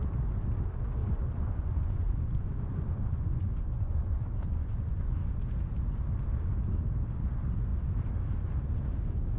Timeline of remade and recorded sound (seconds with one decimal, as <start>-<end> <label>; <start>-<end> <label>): 0.0-1.0 recorded; 1.0-5.5 remade; 5.5-9.4 recorded